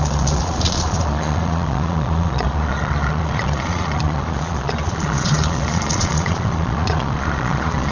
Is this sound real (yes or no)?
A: no